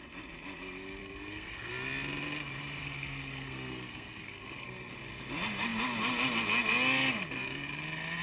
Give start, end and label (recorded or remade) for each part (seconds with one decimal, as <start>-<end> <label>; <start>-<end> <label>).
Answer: 0.0-1.0 recorded; 1.0-1.7 remade; 1.7-2.8 recorded; 2.8-4.9 remade; 4.9-8.2 recorded

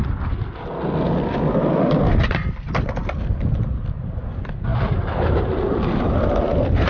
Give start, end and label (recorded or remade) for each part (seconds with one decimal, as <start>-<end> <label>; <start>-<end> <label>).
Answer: 0.0-0.6 remade; 0.6-4.7 recorded; 4.7-6.3 remade; 6.3-6.9 recorded

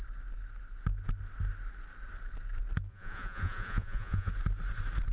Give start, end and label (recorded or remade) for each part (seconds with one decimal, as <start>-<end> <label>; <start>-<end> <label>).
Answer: 0.0-2.9 recorded; 2.9-4.3 remade; 4.3-5.1 recorded

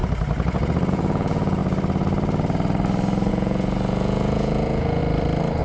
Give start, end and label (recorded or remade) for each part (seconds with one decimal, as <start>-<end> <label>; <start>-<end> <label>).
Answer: 0.0-0.9 recorded; 0.9-1.6 remade; 1.6-3.3 recorded; 3.3-5.0 remade; 5.0-5.6 recorded

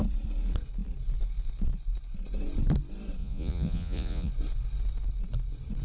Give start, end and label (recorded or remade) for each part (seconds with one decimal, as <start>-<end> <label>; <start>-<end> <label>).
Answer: 0.0-3.2 recorded; 3.2-4.3 remade; 4.3-5.8 recorded

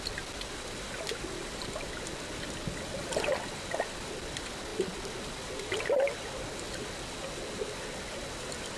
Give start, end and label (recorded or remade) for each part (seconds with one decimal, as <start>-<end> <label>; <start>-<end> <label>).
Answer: 0.0-8.8 recorded

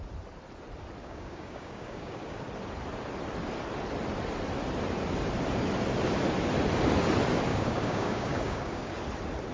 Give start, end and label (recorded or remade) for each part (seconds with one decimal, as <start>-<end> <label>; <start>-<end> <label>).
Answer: 0.0-1.0 recorded; 1.0-2.4 remade; 2.4-7.5 recorded; 7.5-8.9 remade; 8.9-9.5 recorded

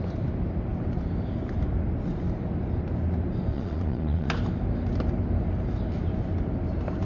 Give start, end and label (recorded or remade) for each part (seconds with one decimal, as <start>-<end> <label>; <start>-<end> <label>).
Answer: 0.0-3.5 recorded; 3.5-4.3 remade; 4.3-7.0 recorded